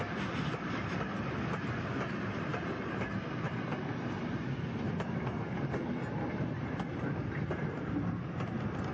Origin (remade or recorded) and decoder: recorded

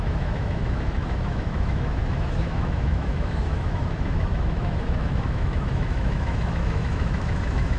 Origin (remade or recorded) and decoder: remade, autoencoder, DAC-VAE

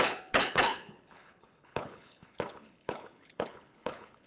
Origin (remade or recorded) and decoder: remade, codec, HILCodec